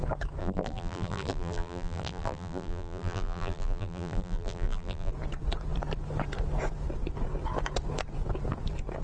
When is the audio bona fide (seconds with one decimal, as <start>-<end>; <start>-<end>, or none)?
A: 0.0-0.4; 5.1-9.0